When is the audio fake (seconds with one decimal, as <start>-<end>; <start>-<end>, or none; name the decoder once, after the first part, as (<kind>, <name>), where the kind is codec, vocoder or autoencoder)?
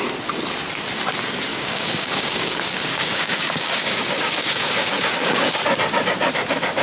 1.5-5.6 (codec, DAC)